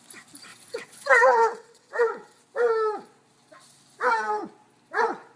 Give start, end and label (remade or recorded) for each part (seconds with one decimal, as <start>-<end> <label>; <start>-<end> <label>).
0.0-0.5 recorded; 0.5-2.4 remade; 2.4-5.4 recorded